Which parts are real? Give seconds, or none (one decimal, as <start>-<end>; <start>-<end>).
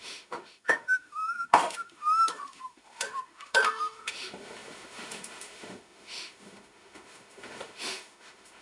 none